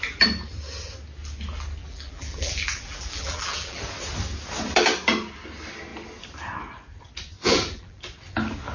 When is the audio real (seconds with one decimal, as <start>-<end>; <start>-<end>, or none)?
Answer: 0.0-1.8; 3.8-7.4; 8.0-8.7